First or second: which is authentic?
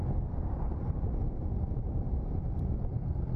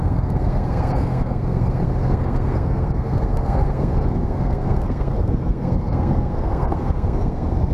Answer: first